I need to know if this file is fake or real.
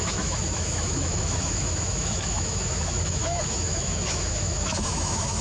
fake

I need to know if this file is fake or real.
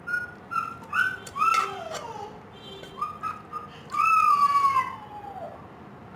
real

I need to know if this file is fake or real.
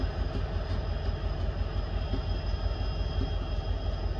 real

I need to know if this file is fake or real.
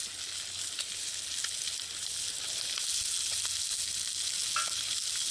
real